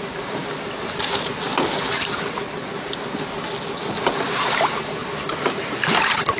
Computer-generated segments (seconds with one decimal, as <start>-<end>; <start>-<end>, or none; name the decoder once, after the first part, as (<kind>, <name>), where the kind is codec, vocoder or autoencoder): 0.0-2.7 (vocoder, BigVGAN v2); 4.3-6.4